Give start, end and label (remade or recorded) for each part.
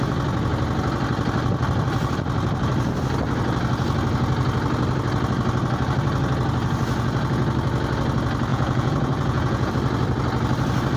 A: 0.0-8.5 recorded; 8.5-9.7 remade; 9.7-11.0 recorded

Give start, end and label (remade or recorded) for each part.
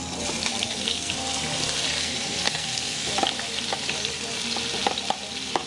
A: 0.0-0.5 recorded; 0.5-1.1 remade; 1.1-2.0 recorded; 2.0-3.1 remade; 3.1-5.7 recorded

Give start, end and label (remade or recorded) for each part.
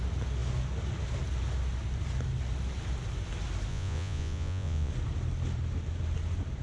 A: 0.0-3.7 recorded; 3.7-4.9 remade; 4.9-6.6 recorded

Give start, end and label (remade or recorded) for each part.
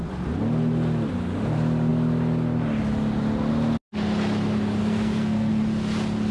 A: 0.0-4.8 recorded; 4.8-5.5 remade; 5.5-6.3 recorded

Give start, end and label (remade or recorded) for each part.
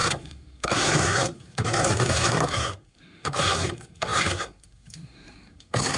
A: 0.0-6.0 remade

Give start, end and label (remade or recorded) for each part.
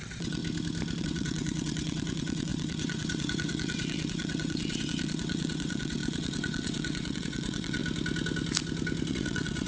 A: 0.0-0.4 remade; 0.4-1.0 recorded; 1.0-7.8 remade; 7.8-9.1 recorded; 9.1-9.7 remade